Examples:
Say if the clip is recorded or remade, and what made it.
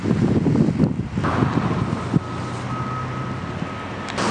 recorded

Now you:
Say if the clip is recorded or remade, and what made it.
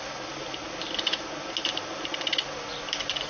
recorded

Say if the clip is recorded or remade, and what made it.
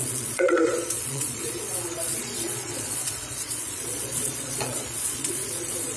remade, vocoder, Vocos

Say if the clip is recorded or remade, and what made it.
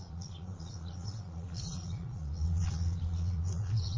remade, vocoder, Vocos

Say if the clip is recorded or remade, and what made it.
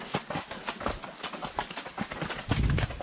recorded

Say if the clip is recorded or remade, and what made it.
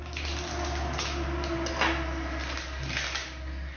recorded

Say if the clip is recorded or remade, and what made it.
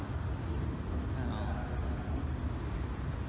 recorded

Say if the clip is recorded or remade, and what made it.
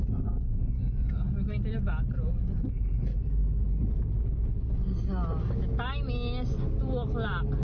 recorded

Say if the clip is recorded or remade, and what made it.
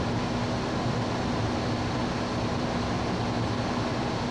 recorded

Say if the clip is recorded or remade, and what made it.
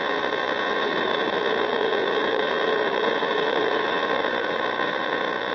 remade, vocoder, Vocos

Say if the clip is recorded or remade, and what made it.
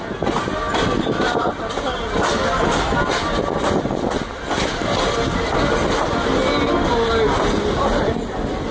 recorded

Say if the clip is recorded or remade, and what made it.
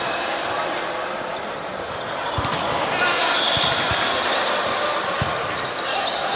recorded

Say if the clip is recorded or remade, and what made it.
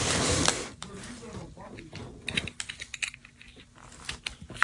recorded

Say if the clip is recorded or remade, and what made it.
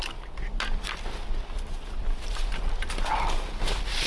recorded